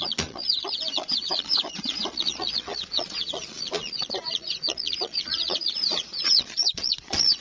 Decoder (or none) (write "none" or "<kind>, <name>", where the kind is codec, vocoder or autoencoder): vocoder, Vocos